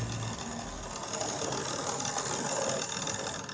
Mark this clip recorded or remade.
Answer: recorded